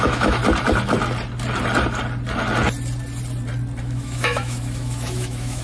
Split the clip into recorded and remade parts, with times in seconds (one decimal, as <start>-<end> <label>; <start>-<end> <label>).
0.0-0.4 remade; 0.4-3.8 recorded; 3.8-5.6 remade